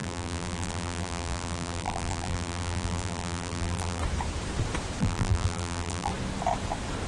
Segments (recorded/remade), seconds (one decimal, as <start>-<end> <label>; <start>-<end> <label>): 0.0-4.0 remade; 4.0-5.0 recorded; 5.0-6.1 remade; 6.1-7.1 recorded